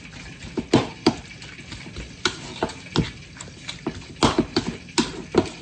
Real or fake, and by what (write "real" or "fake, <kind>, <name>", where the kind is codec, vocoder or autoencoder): real